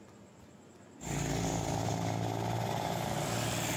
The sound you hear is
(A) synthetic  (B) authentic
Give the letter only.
B